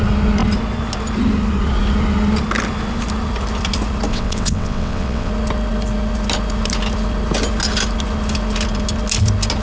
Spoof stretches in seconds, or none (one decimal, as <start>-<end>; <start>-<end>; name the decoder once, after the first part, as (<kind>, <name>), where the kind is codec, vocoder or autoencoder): 4.1-5.3 (vocoder, WaveNeXt)